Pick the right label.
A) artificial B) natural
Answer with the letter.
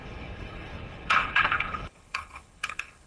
A